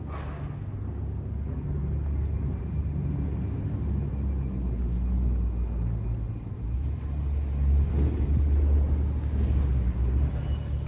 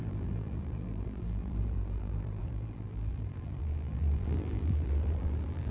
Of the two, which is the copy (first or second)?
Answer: second